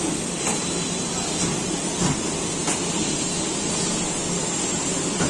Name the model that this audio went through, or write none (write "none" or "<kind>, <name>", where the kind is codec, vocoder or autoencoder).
none